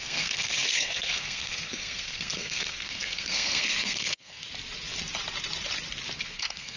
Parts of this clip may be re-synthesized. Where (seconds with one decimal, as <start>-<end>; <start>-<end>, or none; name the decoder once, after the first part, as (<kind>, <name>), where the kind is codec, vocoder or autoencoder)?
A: 0.0-4.4 (codec, SNAC); 6.2-6.8

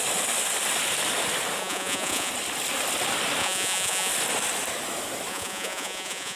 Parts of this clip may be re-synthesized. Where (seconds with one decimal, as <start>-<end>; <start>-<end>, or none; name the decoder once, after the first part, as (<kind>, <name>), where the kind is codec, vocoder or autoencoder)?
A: 1.6-2.3 (vocoder, Vocos); 3.4-4.1; 5.3-6.4

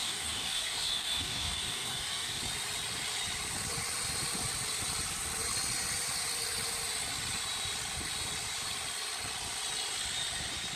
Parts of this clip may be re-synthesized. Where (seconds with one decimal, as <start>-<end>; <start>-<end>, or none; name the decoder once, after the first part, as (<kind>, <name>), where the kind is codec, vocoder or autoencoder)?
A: 0.0-2.4 (codec, DAC)

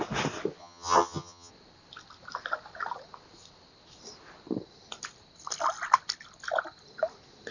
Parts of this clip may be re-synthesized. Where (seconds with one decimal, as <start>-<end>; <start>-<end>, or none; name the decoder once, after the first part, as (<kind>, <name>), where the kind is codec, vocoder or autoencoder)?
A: 0.6-1.5 (vocoder, HiFi-GAN)

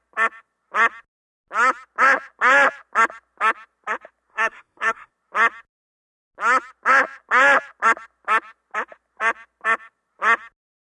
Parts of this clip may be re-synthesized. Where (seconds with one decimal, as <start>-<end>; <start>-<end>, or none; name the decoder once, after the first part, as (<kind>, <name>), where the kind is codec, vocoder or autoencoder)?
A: 4.3-5.1 (codec, SNAC)

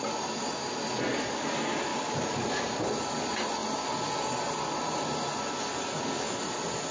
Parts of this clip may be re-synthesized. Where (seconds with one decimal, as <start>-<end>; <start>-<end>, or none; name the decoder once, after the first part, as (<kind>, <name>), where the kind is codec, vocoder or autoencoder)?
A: 1.9-2.8 (vocoder, BigVGAN v2)

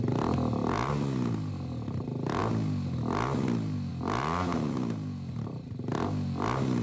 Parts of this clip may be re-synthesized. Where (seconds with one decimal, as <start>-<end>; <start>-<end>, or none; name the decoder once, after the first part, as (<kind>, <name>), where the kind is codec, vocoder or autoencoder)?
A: none